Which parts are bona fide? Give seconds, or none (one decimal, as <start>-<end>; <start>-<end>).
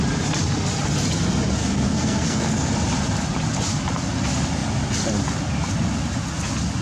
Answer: 0.0-1.6; 2.7-6.8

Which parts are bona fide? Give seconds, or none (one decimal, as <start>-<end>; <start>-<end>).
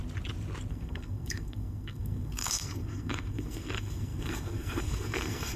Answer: 0.0-0.7